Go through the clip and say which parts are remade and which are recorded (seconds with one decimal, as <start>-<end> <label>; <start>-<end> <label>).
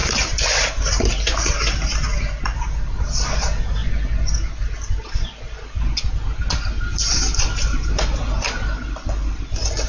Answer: 0.0-9.9 recorded